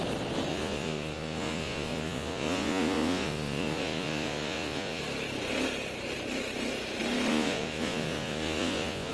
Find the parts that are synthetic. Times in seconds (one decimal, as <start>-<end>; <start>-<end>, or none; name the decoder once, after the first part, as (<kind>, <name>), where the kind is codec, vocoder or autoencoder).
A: 0.5-5.0 (vocoder, Vocos); 7.3-9.1

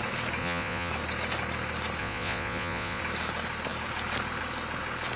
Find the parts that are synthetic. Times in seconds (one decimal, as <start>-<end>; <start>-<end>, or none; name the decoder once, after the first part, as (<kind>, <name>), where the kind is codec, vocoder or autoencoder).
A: 0.4-0.9 (vocoder, Vocos); 2.0-3.0

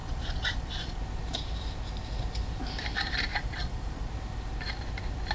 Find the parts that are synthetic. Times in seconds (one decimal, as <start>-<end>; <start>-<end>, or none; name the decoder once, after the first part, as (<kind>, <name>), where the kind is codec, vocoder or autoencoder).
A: 0.0-1.0 (vocoder, Vocos); 3.3-4.1